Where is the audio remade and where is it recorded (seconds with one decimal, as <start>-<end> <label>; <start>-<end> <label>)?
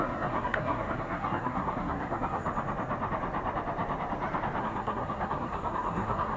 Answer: 0.0-2.4 remade; 2.4-4.6 recorded; 4.6-6.4 remade